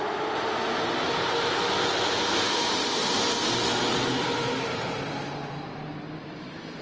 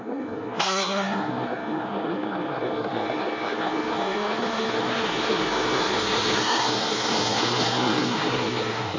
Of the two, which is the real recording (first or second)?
first